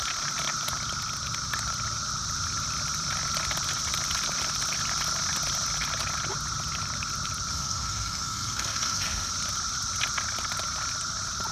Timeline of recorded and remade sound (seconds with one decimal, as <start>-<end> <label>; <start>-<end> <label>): 0.0-7.5 recorded; 7.5-9.3 remade; 9.3-11.5 recorded